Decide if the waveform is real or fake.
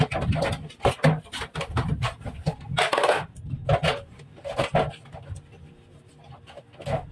real